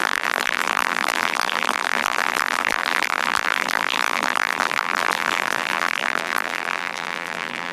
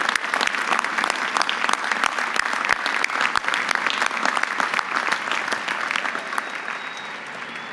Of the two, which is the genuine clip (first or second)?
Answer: second